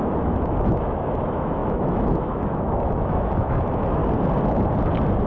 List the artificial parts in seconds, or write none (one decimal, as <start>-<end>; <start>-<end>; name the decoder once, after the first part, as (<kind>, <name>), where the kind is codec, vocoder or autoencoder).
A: 0.0-4.0 (autoencoder, DAC-VAE)